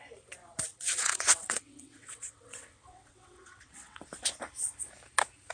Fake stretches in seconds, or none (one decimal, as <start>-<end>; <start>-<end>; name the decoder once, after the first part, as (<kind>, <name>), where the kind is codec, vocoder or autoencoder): 0.7-4.0 (vocoder, WaveNeXt)